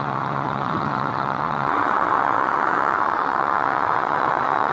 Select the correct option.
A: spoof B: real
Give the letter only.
A